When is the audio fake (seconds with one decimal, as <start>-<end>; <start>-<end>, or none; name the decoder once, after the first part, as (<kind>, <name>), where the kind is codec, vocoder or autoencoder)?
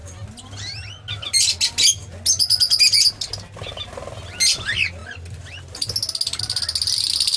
none